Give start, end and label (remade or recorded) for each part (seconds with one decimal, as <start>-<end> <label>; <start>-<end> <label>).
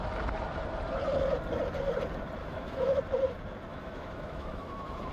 0.0-2.4 recorded; 2.4-3.0 remade; 3.0-3.7 recorded; 3.7-5.1 remade